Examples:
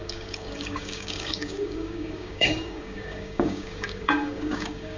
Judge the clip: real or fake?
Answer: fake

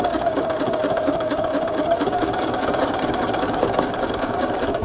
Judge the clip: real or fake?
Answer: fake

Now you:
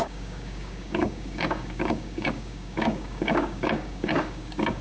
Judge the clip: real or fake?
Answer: fake